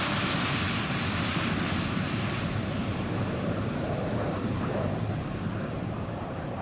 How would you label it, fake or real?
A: fake